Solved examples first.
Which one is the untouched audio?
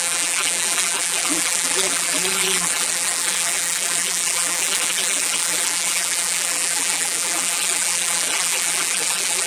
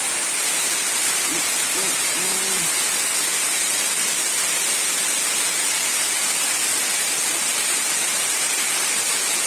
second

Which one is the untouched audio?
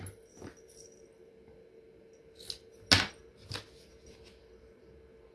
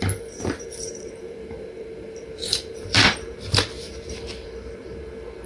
first